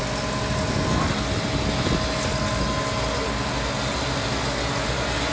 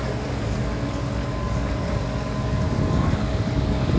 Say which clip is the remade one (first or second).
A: second